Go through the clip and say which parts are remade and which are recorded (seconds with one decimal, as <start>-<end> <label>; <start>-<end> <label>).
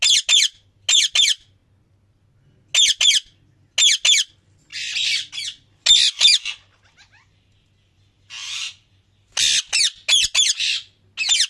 0.0-8.4 recorded; 8.4-8.9 remade; 8.9-11.5 recorded